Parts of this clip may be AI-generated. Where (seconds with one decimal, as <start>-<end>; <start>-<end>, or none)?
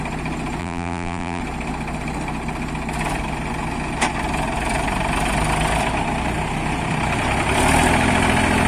0.6-1.4